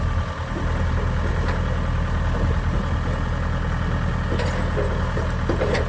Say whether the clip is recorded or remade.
recorded